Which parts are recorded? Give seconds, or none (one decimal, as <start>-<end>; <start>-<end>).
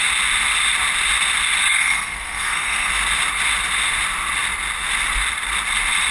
0.0-1.6; 2.9-6.1